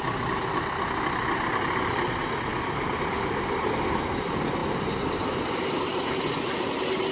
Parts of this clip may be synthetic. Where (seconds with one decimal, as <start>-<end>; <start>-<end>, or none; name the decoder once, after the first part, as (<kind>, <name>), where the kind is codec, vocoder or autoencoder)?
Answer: none